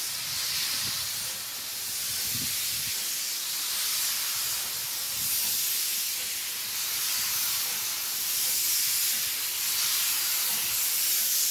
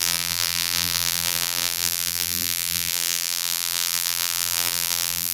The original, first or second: first